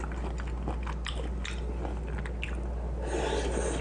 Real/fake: real